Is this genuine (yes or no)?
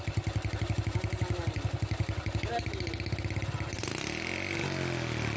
yes